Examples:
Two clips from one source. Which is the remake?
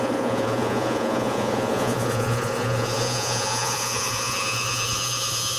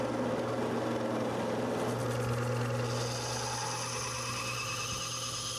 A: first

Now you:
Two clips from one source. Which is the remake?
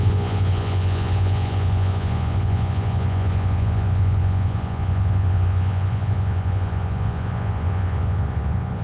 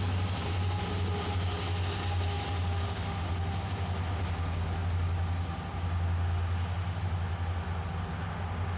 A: first